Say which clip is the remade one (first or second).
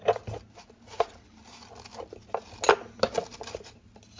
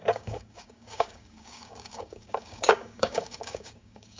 second